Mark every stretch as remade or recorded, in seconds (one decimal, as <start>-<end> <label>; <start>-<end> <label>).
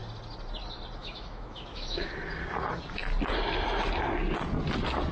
0.0-1.0 recorded; 1.0-2.1 remade; 2.1-5.1 recorded